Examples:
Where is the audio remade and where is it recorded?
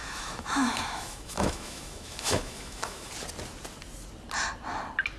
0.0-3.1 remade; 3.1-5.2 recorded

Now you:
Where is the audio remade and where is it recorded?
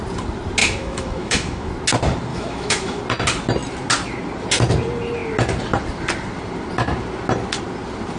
0.0-0.6 recorded; 0.6-1.7 remade; 1.7-2.3 recorded; 2.3-3.0 remade; 3.0-8.2 recorded